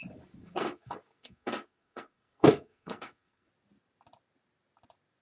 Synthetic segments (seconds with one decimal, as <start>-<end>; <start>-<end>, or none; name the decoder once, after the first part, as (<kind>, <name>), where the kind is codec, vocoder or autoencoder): 0.4-3.5 (codec, SNAC)